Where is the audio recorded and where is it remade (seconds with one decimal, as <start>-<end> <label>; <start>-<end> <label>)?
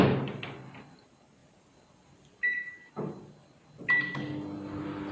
0.0-5.1 recorded